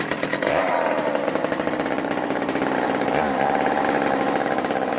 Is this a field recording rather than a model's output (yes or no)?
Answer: no